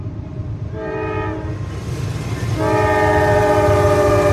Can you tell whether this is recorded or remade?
recorded